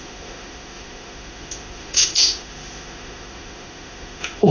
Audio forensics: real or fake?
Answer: fake